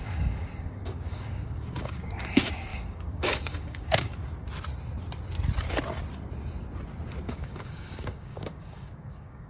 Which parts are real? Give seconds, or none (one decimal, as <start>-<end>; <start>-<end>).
4.1-7.3